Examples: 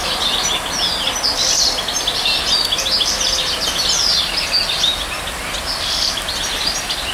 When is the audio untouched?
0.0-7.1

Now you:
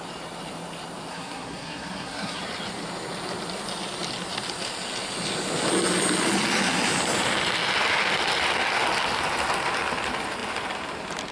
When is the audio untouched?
0.0-1.1; 2.4-11.3

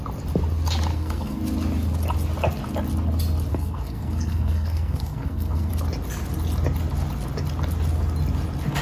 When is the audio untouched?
0.0-0.9; 1.4-3.5; 5.7-8.8